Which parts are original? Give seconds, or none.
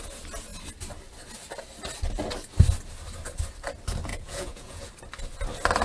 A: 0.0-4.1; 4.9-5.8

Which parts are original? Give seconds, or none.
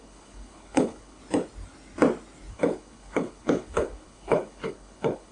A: 1.2-2.5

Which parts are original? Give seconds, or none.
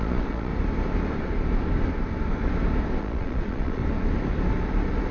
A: 0.5-3.0; 3.8-5.1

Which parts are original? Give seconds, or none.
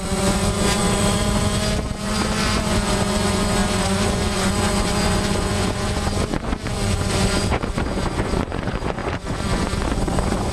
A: none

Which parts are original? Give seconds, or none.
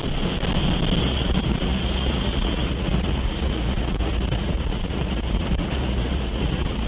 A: 0.0-1.0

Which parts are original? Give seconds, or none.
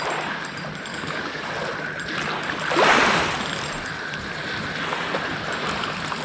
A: 0.0-0.9; 1.5-6.2